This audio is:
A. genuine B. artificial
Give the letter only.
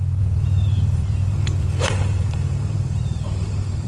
B